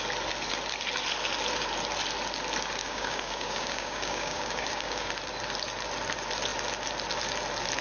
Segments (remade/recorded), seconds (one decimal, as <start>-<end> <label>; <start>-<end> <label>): 0.0-2.8 recorded; 2.8-5.1 remade; 5.1-7.8 recorded